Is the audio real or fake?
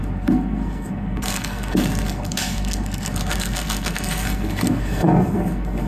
fake